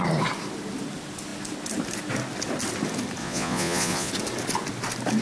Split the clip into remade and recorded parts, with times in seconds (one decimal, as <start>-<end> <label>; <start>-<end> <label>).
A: 0.0-3.2 recorded; 3.2-4.1 remade; 4.1-5.2 recorded